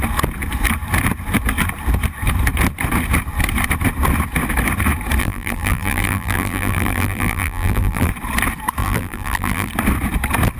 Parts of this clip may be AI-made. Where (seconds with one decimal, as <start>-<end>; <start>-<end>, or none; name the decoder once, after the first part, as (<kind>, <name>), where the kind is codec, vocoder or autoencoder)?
5.2-8.1 (vocoder, BigVGAN v2); 8.8-9.7